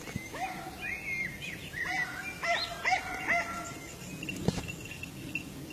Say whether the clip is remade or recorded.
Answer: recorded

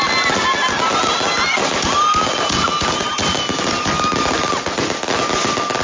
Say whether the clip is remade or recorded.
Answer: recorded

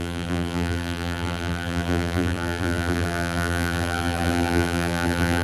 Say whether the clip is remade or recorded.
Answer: remade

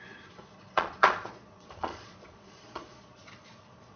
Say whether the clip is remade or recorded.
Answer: remade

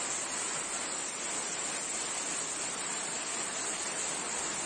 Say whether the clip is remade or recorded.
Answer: recorded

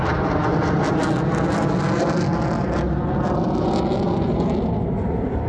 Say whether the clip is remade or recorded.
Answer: recorded